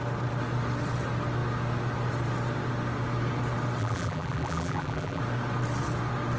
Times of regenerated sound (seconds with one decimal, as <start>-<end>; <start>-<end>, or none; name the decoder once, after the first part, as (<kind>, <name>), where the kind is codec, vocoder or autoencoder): 3.8-5.2 (vocoder, BigVGAN v2)

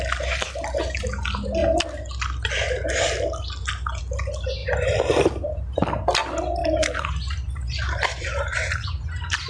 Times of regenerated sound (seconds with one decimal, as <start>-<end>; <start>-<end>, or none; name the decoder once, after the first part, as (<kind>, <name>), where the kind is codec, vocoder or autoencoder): 4.6-5.8 (vocoder, BigVGAN v2); 6.6-9.5